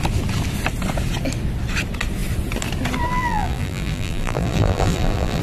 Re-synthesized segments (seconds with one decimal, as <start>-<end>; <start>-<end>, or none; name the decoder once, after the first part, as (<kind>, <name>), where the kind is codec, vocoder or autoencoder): 3.1-5.4 (vocoder, BigVGAN v2)